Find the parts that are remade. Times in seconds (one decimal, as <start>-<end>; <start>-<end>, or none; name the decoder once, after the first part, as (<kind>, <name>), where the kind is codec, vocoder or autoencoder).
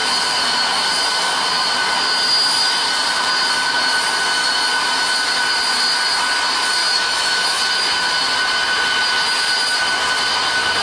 6.8-7.6 (autoencoder, DAC-VAE)